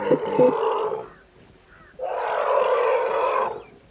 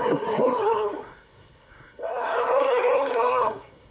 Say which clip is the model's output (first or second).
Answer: second